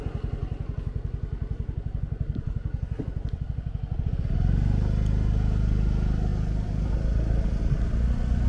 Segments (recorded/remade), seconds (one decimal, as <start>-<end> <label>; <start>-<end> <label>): 0.0-8.5 recorded